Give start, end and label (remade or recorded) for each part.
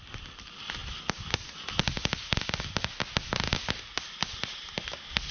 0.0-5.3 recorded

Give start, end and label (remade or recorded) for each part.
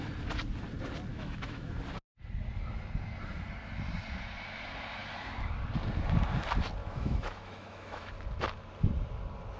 0.0-1.1 recorded; 1.1-1.8 remade; 1.8-6.8 recorded; 6.8-8.1 remade; 8.1-9.6 recorded